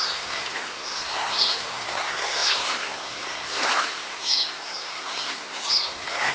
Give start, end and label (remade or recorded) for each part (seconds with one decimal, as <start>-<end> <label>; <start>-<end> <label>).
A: 0.0-6.3 remade